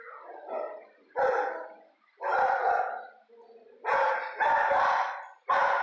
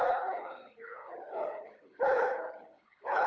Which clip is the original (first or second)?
first